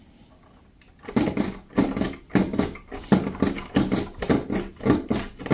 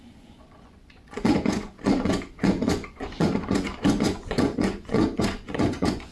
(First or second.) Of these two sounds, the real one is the first